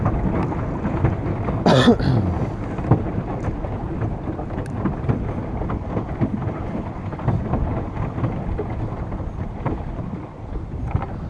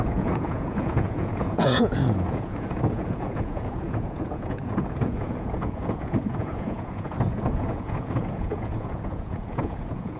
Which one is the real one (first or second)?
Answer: first